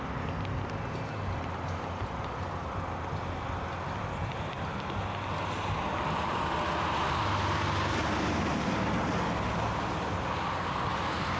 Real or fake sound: real